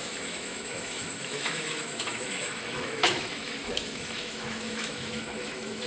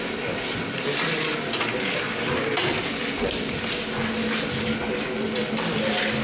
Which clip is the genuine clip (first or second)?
second